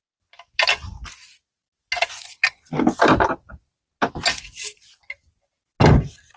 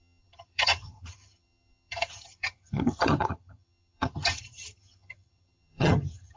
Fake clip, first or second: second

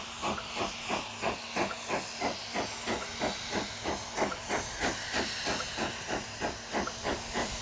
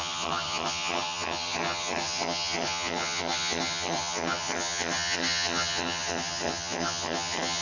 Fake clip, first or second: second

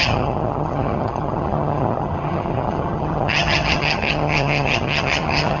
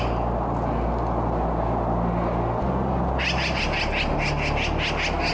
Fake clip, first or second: first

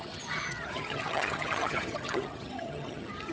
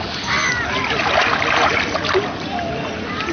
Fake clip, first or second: first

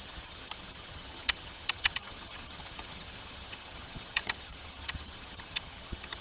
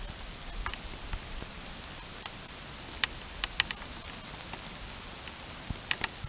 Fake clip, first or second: first